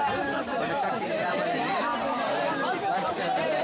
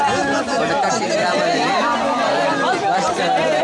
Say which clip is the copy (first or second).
first